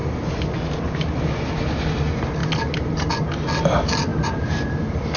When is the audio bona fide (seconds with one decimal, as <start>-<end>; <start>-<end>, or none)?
0.0-5.2